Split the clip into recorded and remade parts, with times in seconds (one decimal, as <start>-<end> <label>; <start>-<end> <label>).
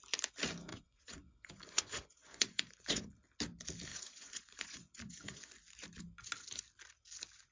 0.0-0.7 recorded; 0.7-3.1 remade; 3.1-3.9 recorded; 3.9-5.5 remade; 5.5-7.5 recorded